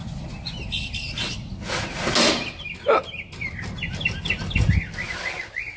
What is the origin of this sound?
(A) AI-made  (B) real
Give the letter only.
B